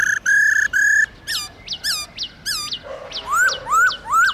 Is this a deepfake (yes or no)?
no